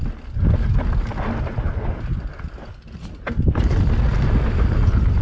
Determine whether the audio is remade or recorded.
recorded